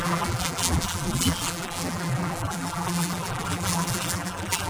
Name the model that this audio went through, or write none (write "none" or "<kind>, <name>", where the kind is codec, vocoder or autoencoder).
vocoder, BigVGAN v2